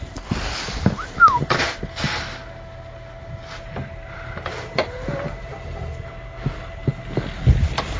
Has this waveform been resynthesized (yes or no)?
no